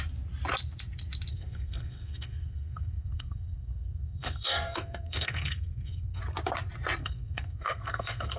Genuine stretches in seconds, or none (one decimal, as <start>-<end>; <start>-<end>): 0.0-1.3; 6.2-7.0